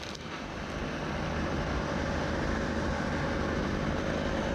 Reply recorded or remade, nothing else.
recorded